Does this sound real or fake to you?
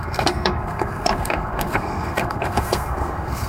fake